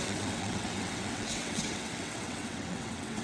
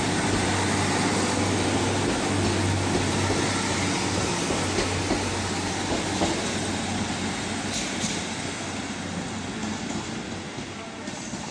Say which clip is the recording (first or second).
second